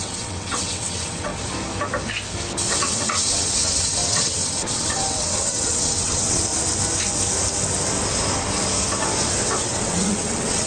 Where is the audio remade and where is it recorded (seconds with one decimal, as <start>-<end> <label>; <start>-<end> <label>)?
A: 0.0-1.3 remade; 1.3-2.7 recorded; 2.7-6.5 remade; 6.5-9.6 recorded; 9.6-10.7 remade